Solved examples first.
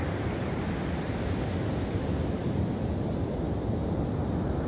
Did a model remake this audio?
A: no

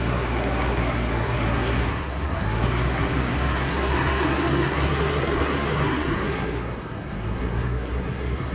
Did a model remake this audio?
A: yes